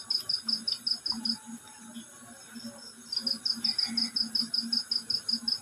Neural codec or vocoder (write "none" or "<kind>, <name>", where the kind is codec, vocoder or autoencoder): none